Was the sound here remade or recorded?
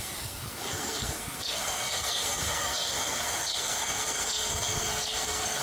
remade